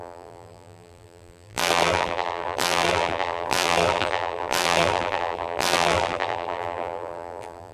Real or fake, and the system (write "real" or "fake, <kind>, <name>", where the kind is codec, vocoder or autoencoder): fake, vocoder, BigVGAN v2